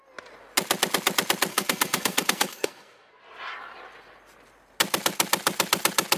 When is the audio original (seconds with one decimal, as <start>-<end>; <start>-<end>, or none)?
0.0-1.5; 3.2-6.2